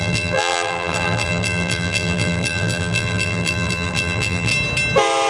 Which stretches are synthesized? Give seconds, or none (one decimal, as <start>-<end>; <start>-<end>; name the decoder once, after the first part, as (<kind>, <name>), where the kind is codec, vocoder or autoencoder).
0.0-4.5 (vocoder, BigVGAN v2)